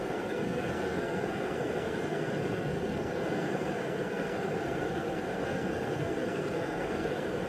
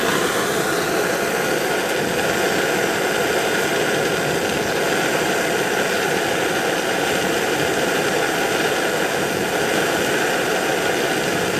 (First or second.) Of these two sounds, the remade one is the first